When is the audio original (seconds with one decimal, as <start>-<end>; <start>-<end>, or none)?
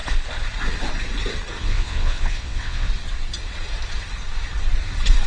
0.0-1.6; 2.9-5.3